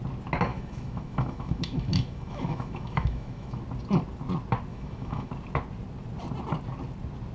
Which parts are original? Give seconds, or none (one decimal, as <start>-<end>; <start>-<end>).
0.0-0.5; 3.6-4.7; 5.3-7.3